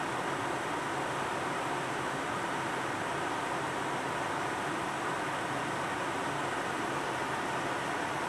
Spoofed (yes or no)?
no